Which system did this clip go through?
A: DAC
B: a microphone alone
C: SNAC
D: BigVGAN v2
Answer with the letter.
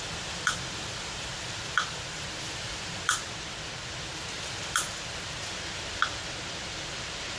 D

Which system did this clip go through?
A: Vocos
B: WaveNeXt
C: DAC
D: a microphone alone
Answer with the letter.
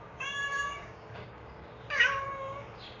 C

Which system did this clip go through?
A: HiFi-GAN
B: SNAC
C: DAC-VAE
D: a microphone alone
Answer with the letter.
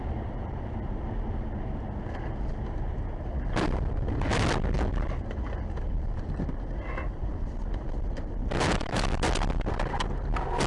D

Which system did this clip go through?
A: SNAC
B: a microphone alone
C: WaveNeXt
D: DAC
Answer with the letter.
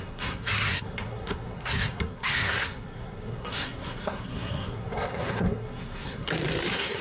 A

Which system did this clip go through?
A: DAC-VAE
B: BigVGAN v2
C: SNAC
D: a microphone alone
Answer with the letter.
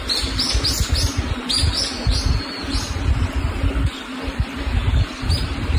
D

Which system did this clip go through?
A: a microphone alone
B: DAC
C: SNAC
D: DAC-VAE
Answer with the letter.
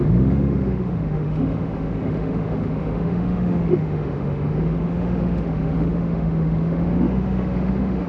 D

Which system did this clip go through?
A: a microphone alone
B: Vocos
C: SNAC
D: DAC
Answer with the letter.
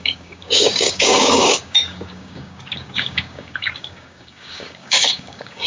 D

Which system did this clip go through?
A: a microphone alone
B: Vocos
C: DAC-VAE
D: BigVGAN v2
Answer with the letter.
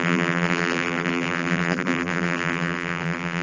D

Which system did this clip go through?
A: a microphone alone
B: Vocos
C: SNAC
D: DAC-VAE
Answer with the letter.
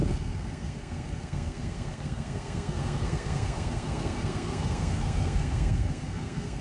C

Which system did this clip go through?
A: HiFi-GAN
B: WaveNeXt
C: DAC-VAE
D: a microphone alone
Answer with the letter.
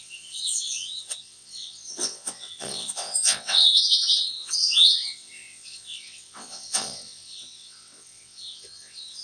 B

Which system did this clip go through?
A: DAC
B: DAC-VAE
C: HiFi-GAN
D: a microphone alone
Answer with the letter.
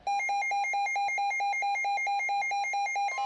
D